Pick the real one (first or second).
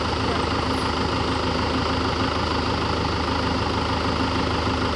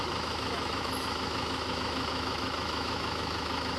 first